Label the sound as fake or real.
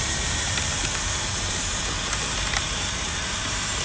fake